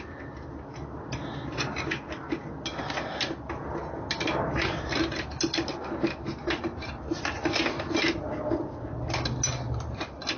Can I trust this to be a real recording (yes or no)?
yes